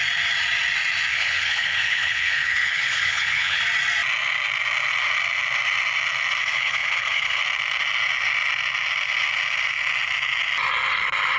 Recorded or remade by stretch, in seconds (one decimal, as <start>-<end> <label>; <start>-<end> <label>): 0.0-1.1 recorded; 1.1-3.6 remade; 3.6-6.4 recorded; 6.4-7.4 remade; 7.4-11.4 recorded